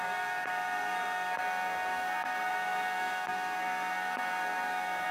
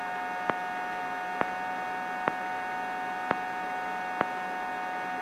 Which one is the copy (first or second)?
first